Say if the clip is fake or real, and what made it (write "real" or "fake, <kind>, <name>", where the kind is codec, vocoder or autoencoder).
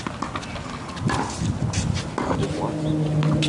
real